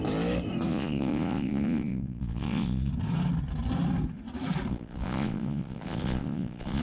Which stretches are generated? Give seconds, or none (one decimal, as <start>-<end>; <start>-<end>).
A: 0.7-2.9; 4.7-6.8